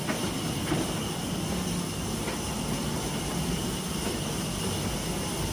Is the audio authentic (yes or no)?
yes